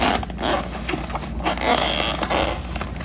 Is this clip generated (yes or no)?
no